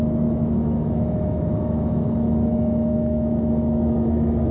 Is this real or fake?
fake